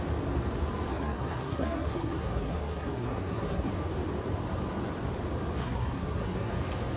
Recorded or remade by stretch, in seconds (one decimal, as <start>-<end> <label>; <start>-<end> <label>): 0.0-0.9 recorded; 0.9-3.7 remade; 3.7-5.6 recorded; 5.6-6.5 remade; 6.5-7.0 recorded